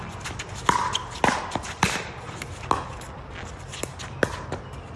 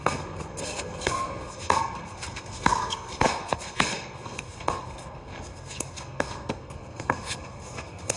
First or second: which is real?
first